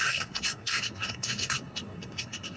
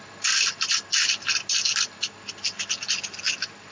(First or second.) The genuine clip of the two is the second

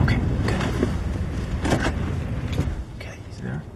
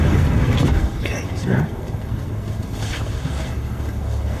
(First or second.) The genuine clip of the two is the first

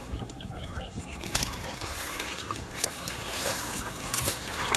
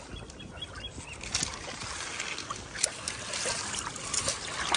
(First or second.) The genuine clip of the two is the second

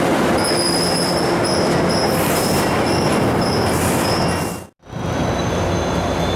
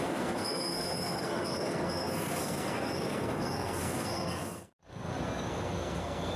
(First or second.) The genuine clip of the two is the first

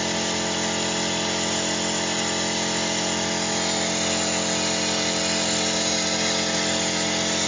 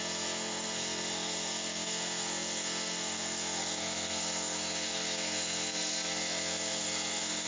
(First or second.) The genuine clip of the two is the first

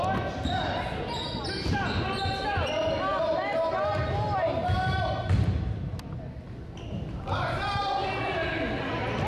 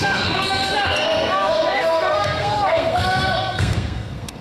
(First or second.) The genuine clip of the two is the first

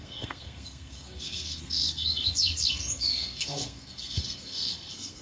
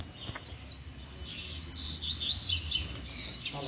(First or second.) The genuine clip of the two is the second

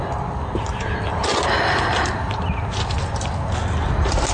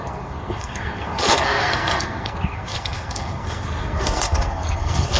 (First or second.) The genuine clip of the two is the first